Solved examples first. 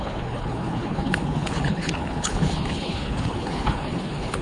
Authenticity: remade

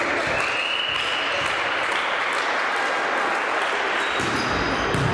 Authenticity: recorded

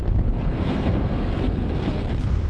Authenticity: remade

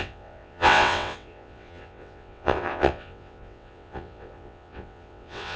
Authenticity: remade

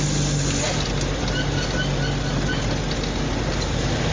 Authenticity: recorded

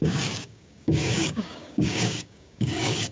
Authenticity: remade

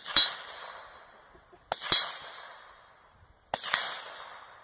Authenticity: recorded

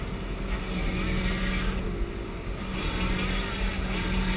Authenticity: recorded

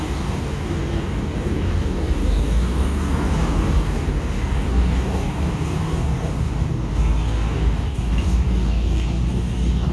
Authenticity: remade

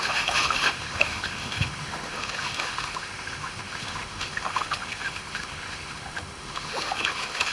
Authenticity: remade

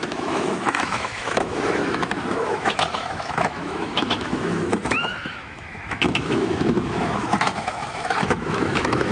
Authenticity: remade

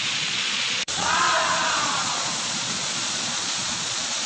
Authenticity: remade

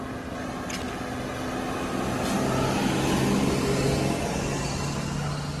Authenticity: recorded